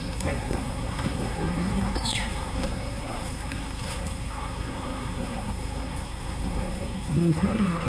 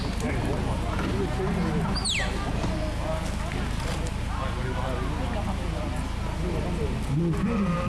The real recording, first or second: second